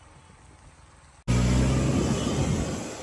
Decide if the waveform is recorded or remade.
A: recorded